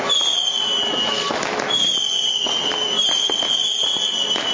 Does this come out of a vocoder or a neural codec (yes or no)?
no